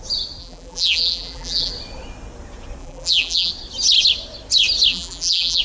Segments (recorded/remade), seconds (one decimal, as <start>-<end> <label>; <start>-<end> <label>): 0.0-0.4 recorded; 0.4-1.7 remade; 1.7-2.8 recorded; 2.8-3.5 remade; 3.5-4.9 recorded; 4.9-5.6 remade